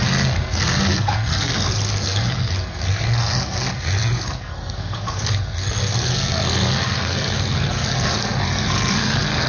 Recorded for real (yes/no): no